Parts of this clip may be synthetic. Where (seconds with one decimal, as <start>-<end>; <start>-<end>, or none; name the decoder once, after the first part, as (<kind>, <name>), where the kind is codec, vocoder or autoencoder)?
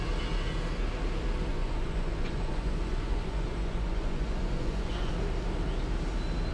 1.5-5.1 (vocoder, Vocos)